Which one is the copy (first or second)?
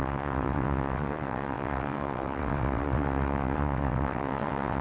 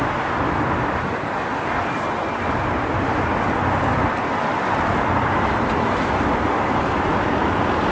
first